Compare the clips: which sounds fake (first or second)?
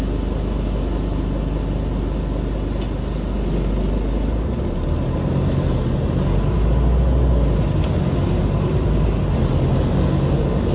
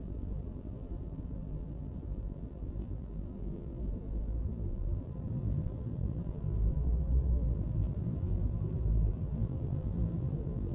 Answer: second